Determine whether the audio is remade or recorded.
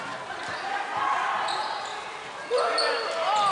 recorded